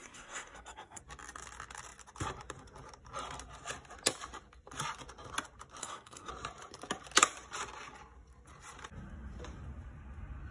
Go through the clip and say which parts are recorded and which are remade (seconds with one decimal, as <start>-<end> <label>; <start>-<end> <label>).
0.0-1.0 remade; 1.0-5.8 recorded; 5.8-6.3 remade; 6.3-10.5 recorded

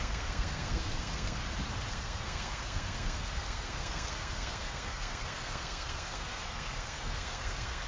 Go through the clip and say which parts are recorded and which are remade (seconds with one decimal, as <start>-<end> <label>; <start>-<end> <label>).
0.0-1.4 remade; 1.4-1.9 recorded; 1.9-7.9 remade